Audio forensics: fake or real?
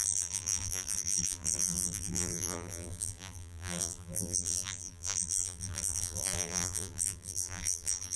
fake